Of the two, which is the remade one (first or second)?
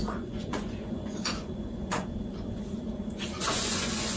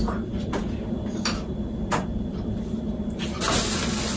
first